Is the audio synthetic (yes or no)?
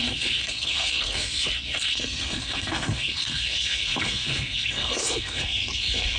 yes